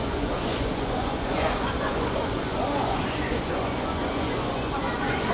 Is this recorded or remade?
remade